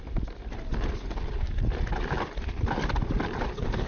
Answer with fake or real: real